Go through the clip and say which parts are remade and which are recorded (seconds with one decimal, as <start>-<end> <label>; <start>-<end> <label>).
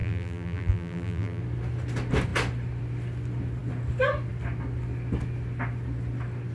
0.0-1.4 remade; 1.4-6.5 recorded